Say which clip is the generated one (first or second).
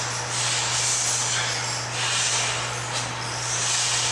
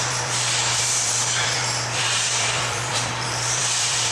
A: second